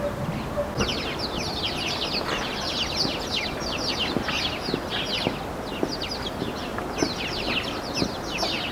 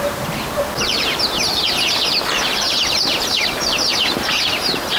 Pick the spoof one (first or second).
second